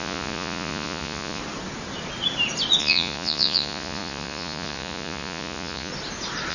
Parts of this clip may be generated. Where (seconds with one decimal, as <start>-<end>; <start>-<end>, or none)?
0.0-1.4; 2.8-5.9